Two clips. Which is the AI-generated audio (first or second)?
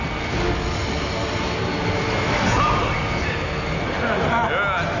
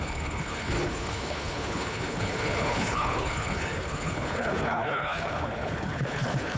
second